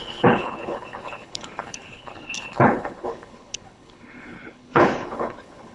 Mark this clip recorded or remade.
remade